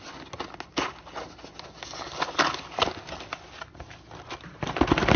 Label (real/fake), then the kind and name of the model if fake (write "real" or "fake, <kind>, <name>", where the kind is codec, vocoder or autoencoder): real